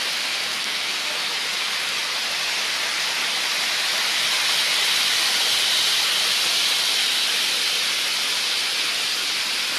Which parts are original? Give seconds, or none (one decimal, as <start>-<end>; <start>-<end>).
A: 0.0-0.5; 1.3-9.8